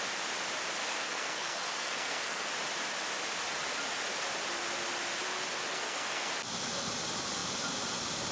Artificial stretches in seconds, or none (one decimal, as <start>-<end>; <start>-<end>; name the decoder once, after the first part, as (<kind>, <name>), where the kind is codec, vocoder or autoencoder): 0.8-2.5 (codec, SNAC); 5.7-6.3